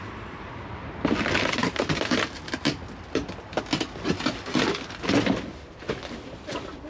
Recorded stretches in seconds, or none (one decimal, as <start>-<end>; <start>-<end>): 0.0-6.9